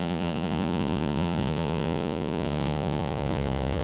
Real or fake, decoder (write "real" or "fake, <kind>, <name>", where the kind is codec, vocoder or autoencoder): fake, vocoder, Vocos